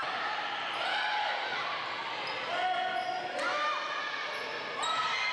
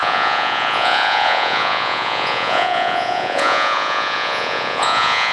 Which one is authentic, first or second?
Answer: first